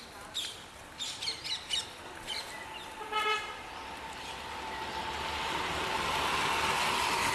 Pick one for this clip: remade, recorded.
recorded